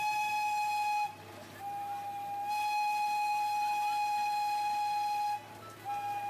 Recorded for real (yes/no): yes